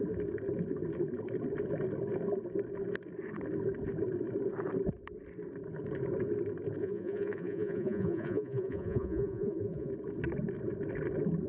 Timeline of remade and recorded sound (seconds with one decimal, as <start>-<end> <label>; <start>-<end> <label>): 0.0-6.8 recorded; 6.8-9.9 remade; 9.9-11.5 recorded